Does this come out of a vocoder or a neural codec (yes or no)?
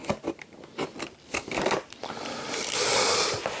no